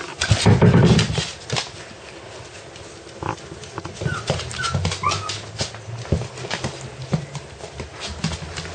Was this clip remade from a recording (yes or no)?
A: no